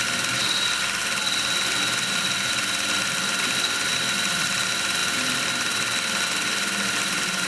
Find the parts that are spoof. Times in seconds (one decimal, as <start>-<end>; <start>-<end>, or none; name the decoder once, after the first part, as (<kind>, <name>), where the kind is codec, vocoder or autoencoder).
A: none